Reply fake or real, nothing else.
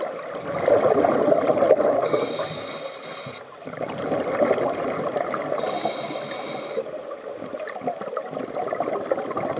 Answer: real